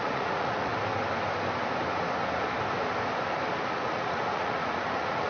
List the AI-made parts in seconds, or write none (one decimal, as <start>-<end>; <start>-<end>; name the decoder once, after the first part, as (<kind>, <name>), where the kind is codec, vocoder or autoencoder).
0.0-0.7 (vocoder, Vocos); 3.6-5.3